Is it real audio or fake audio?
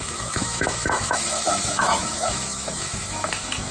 fake